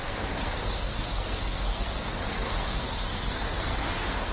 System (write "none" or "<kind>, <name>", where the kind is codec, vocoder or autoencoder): codec, SNAC